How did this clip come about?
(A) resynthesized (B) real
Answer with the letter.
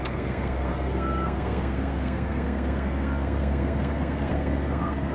A